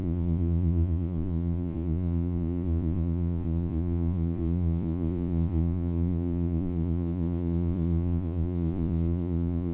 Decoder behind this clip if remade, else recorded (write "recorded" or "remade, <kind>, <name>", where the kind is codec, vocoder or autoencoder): remade, vocoder, Vocos